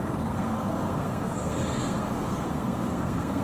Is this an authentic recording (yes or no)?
no